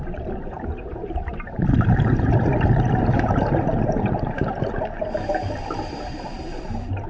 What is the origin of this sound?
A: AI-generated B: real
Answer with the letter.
A